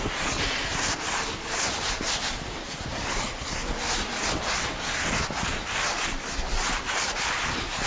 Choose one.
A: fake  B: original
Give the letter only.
B